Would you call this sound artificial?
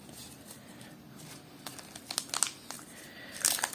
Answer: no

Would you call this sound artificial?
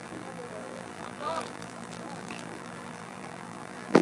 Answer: yes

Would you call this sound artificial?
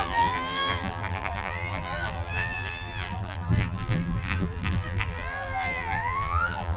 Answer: yes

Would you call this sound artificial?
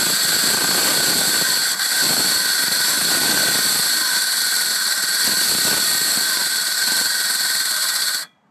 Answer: no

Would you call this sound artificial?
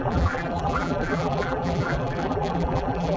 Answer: yes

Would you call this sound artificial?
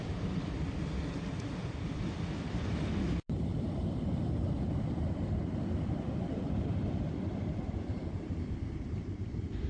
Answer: yes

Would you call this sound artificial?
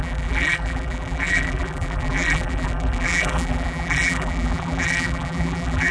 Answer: yes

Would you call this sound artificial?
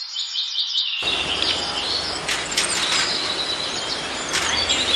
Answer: yes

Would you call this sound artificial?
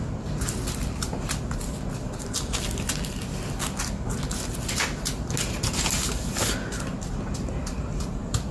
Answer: no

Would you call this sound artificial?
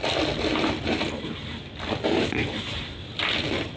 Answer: no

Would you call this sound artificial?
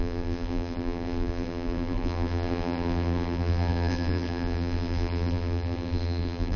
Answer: yes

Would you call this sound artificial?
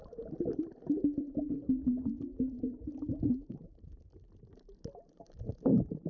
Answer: yes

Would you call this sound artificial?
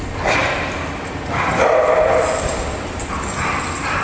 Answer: yes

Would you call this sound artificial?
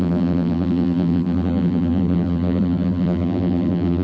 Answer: yes